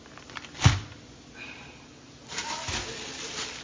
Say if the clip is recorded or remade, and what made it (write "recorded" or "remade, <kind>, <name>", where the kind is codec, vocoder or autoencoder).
recorded